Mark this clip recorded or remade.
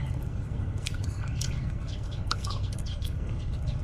remade